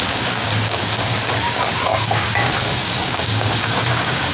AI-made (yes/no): yes